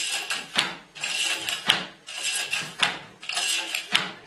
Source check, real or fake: real